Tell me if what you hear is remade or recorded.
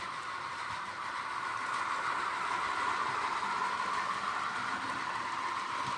recorded